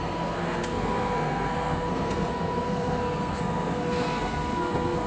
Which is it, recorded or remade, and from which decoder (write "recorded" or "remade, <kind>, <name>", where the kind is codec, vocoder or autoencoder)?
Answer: remade, codec, SNAC